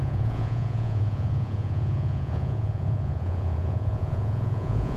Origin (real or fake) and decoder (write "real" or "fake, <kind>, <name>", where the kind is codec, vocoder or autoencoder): fake, vocoder, Vocos